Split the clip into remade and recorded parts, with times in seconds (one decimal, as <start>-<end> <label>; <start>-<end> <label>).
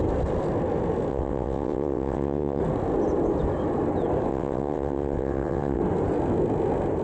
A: 0.0-1.1 recorded; 1.1-2.6 remade; 2.6-4.3 recorded; 4.3-5.8 remade; 5.8-7.0 recorded